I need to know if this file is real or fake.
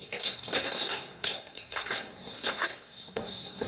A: fake